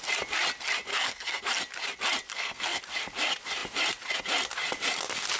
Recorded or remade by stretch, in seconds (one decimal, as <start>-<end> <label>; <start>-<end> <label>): 0.0-0.9 recorded; 0.9-1.4 remade; 1.4-2.3 recorded; 2.3-2.8 remade; 2.8-5.4 recorded